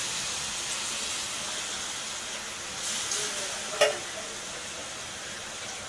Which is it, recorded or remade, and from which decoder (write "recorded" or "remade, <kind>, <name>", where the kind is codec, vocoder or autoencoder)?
recorded